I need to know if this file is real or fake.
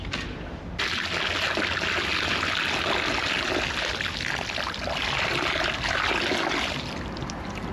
real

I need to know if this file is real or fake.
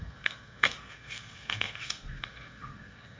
fake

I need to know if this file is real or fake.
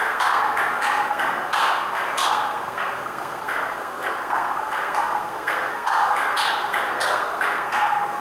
fake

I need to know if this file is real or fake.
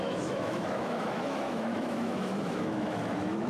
fake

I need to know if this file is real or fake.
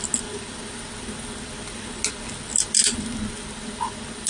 real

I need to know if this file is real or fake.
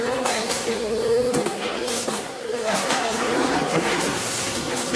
fake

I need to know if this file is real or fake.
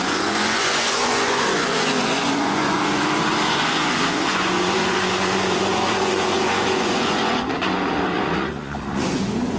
fake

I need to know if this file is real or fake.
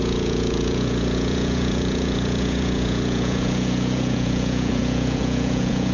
fake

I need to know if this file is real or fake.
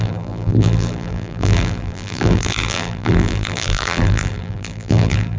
fake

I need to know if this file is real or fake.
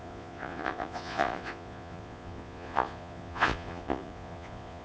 fake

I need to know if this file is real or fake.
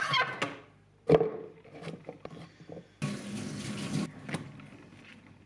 real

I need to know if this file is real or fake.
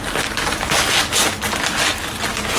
real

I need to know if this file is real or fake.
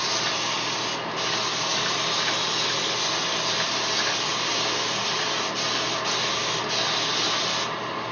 real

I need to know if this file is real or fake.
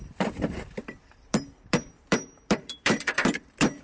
fake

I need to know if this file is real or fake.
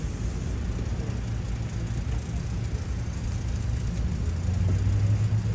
real